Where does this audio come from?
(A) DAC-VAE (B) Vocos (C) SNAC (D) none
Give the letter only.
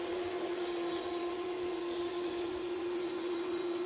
B